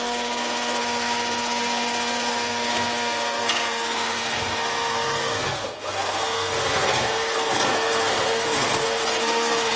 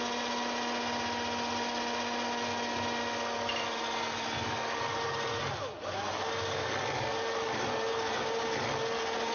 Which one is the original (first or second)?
second